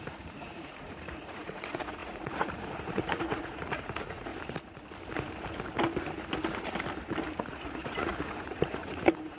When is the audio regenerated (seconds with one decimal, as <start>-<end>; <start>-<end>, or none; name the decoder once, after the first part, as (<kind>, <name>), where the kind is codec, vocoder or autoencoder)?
0.0-4.3 (vocoder, Vocos); 7.5-9.4